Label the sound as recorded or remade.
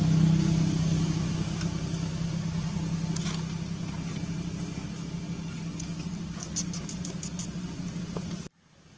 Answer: recorded